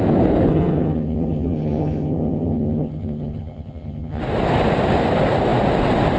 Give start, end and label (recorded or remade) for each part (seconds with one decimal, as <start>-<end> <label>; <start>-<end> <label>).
0.0-0.5 recorded; 0.5-4.2 remade; 4.2-6.2 recorded